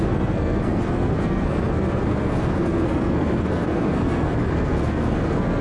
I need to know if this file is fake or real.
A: fake